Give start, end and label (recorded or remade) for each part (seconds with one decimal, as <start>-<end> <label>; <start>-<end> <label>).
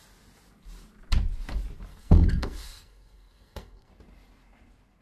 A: 0.0-1.9 recorded; 1.9-3.9 remade; 3.9-5.0 recorded